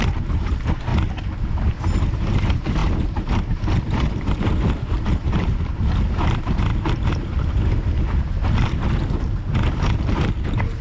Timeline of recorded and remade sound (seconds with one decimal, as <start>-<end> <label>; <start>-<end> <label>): 0.0-10.8 remade